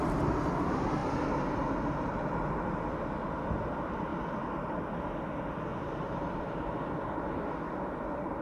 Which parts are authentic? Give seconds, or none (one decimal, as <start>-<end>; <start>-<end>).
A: 0.0-1.0; 1.5-5.7; 6.7-8.4